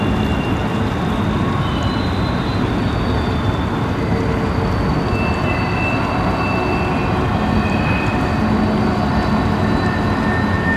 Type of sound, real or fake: real